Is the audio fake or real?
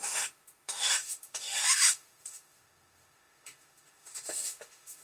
fake